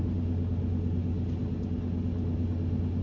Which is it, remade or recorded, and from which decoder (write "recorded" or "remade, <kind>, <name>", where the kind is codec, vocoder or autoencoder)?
recorded